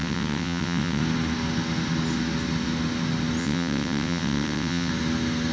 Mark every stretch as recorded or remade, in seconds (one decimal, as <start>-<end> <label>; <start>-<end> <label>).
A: 0.0-1.0 remade; 1.0-3.4 recorded; 3.4-4.9 remade; 4.9-5.5 recorded

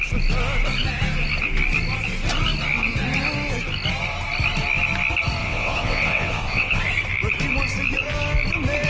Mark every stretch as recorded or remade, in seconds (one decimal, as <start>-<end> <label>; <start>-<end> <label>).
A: 0.0-5.4 recorded; 5.4-6.8 remade; 6.8-8.9 recorded